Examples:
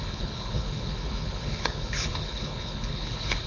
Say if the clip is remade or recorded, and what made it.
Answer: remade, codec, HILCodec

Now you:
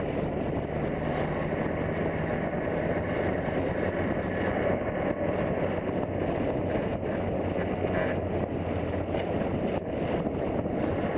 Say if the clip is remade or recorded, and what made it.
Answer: recorded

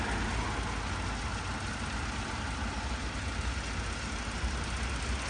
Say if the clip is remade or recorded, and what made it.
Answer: recorded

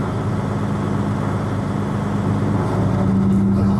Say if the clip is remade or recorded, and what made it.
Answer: recorded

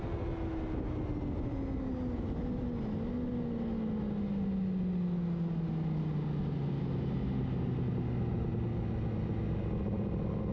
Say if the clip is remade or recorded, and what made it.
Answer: recorded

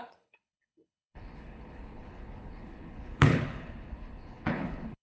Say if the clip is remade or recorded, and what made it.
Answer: remade, codec, HILCodec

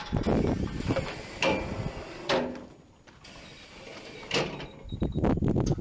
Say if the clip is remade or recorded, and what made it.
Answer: recorded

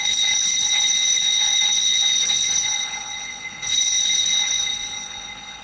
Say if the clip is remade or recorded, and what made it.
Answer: remade, codec, HILCodec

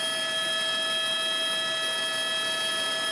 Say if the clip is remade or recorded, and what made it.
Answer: recorded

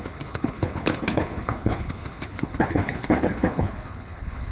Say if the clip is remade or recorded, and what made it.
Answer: remade, codec, HILCodec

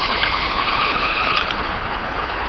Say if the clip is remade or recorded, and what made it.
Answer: remade, codec, HILCodec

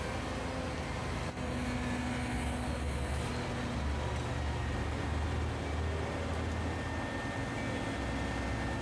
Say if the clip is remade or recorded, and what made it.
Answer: recorded